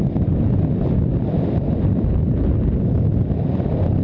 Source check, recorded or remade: recorded